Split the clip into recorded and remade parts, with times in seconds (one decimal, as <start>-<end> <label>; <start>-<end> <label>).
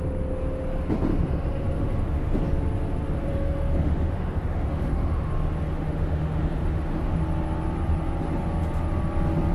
0.0-1.1 recorded; 1.1-2.4 remade; 2.4-3.2 recorded; 3.2-5.3 remade; 5.3-5.7 recorded; 5.7-7.2 remade; 7.2-9.5 recorded